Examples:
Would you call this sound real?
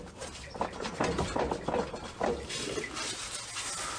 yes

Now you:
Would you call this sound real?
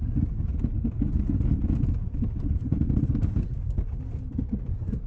yes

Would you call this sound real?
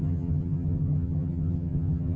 no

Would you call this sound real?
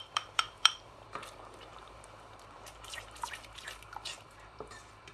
no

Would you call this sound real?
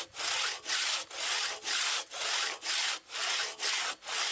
yes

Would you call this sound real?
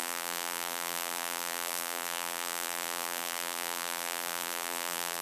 no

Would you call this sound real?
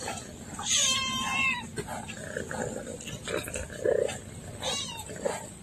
yes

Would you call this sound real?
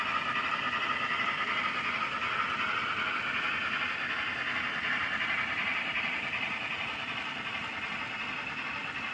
yes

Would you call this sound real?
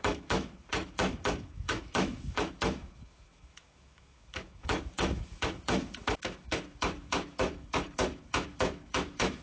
no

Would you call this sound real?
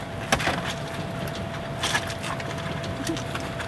yes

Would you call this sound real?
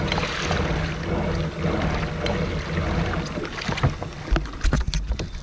yes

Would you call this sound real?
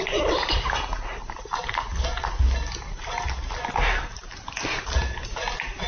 yes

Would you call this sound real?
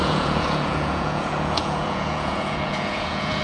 no